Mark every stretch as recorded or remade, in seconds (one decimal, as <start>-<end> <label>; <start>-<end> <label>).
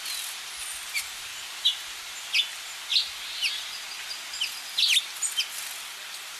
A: 0.0-6.4 recorded